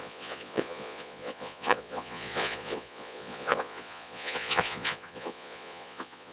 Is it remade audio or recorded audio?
remade